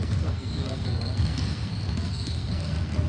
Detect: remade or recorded remade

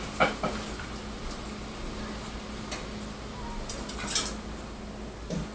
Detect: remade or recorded recorded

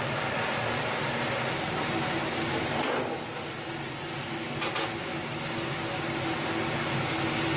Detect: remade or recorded recorded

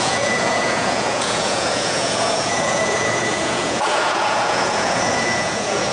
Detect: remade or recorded remade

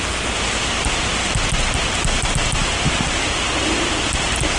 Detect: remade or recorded recorded